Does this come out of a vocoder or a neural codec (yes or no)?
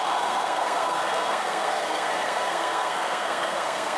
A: yes